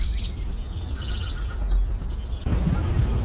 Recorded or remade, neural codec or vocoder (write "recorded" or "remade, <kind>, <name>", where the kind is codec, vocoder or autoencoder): recorded